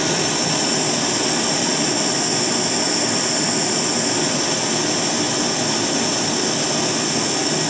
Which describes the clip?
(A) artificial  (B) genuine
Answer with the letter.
B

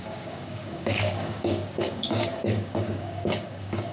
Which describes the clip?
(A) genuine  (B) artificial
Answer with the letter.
B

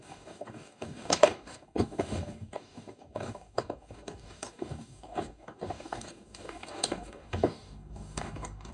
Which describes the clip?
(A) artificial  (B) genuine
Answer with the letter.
A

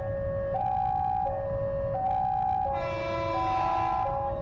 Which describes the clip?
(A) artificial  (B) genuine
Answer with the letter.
B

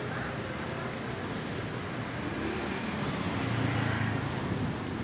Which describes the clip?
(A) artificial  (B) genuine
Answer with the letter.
B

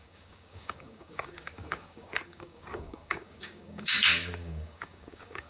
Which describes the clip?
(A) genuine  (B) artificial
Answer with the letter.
B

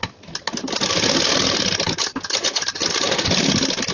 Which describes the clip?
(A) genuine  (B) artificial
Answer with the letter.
A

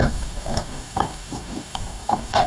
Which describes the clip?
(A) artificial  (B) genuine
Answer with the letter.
A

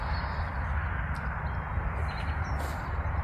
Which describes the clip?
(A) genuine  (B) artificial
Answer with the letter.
A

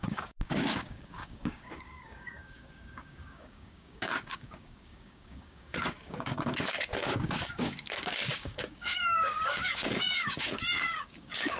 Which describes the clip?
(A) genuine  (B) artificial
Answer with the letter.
B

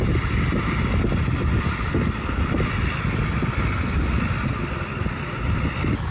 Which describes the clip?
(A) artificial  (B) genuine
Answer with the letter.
B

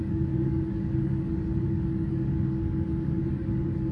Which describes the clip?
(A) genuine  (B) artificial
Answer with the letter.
B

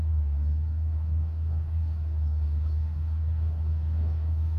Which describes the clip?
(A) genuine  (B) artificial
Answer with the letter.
B